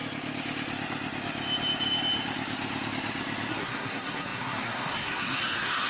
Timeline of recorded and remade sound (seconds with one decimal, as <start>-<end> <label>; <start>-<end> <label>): 0.0-3.5 recorded; 3.5-5.9 remade